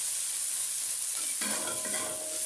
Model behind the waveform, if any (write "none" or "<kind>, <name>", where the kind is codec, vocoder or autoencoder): none